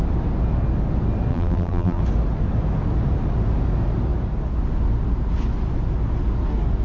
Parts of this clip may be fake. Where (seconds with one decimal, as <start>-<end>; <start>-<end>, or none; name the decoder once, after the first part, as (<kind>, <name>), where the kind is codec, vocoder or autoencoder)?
1.3-2.0 (vocoder, BigVGAN v2)